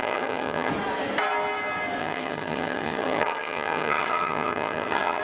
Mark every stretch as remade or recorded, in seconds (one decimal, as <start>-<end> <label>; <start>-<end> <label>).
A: 0.0-0.7 remade; 0.7-2.0 recorded; 2.0-5.2 remade